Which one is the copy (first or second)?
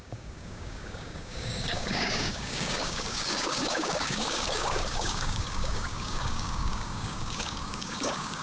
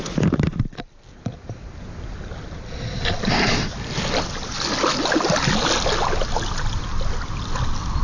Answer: first